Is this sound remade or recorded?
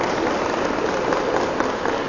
recorded